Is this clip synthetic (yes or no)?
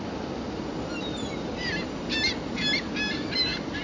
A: no